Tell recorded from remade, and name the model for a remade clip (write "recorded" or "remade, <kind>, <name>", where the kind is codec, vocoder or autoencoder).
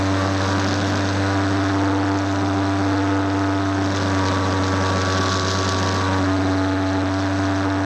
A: recorded